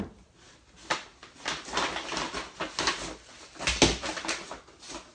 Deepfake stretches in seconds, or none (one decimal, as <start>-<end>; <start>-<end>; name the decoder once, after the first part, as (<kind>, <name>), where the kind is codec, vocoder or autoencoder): none

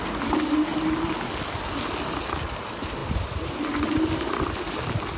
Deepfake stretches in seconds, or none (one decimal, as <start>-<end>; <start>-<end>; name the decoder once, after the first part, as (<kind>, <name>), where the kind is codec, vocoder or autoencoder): none